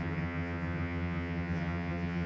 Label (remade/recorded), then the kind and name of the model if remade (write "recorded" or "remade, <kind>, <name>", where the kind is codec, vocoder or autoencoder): remade, vocoder, HiFi-GAN